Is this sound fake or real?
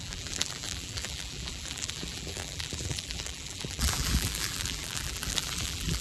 fake